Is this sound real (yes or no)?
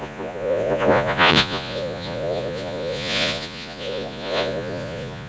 no